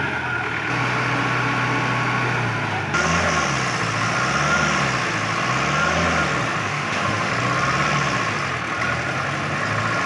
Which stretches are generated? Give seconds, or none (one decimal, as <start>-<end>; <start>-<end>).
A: 6.6-7.3